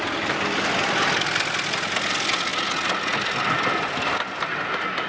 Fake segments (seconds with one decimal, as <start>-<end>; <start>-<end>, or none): none